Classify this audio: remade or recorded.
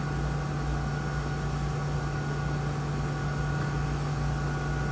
recorded